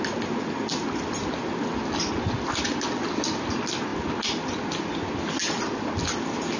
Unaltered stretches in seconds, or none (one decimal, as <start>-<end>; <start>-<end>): 0.0-6.6